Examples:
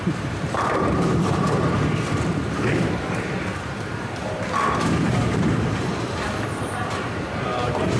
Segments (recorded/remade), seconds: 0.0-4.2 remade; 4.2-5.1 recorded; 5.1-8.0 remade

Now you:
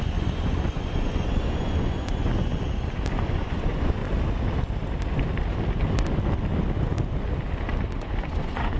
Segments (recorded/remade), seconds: 0.0-2.5 remade; 2.5-3.1 recorded; 3.1-4.0 remade; 4.0-8.0 recorded; 8.0-8.8 remade

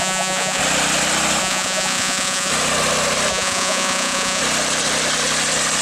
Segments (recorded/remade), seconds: 0.0-0.6 remade; 0.6-1.4 recorded; 1.4-2.5 remade; 2.5-3.3 recorded; 3.3-4.4 remade; 4.4-5.8 recorded

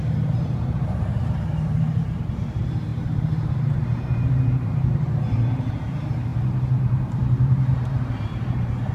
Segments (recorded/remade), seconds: 0.0-8.9 remade

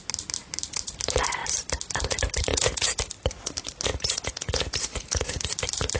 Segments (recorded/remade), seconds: 0.0-2.5 recorded; 2.5-3.0 remade; 3.0-3.9 recorded; 3.9-5.5 remade; 5.5-6.0 recorded

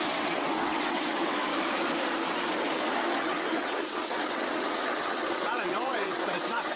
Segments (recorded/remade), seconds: 0.0-1.5 remade; 1.5-3.2 recorded; 3.2-6.8 remade